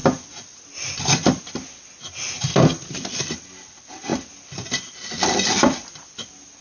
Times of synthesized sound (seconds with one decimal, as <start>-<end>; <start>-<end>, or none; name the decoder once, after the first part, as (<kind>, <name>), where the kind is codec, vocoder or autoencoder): none